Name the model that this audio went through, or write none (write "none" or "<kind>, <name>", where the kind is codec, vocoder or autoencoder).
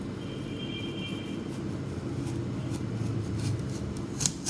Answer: none